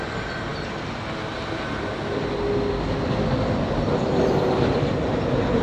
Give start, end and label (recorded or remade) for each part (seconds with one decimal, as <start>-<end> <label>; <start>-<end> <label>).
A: 0.0-5.6 recorded